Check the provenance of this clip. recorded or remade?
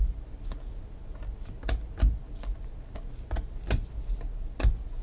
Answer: recorded